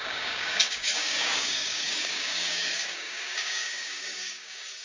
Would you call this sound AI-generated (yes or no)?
yes